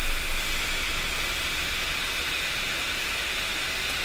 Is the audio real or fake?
real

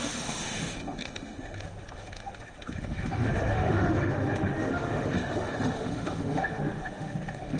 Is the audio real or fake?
fake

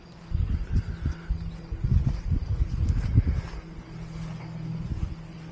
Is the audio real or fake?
real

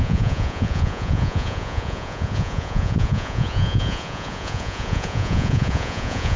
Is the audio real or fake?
fake